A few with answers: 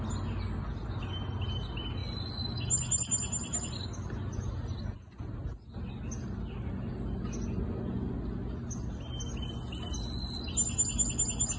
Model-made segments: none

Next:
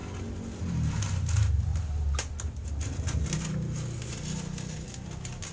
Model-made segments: none

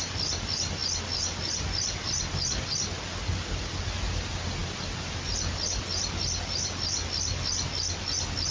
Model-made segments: none

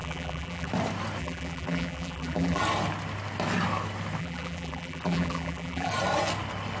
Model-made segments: 0.0-0.7; 1.2-2.6; 4.2-5.9